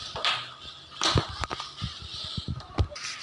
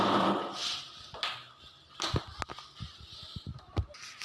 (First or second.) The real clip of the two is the second